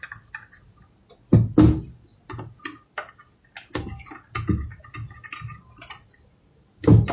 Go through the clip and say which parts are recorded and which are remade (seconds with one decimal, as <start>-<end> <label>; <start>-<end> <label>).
0.0-7.1 recorded